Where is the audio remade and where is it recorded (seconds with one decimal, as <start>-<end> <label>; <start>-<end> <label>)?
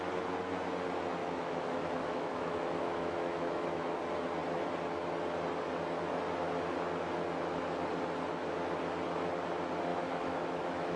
0.0-1.2 recorded; 1.2-4.0 remade; 4.0-9.9 recorded; 9.9-11.0 remade